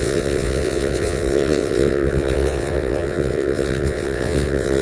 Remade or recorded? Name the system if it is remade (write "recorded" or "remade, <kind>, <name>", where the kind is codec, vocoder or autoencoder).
remade, vocoder, WaveNeXt